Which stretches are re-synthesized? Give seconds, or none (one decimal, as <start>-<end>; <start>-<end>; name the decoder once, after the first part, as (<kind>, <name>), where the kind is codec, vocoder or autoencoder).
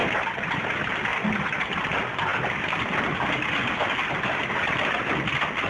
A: 0.0-0.7 (vocoder, BigVGAN v2)